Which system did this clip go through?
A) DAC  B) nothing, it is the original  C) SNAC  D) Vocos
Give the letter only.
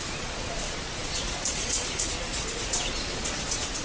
D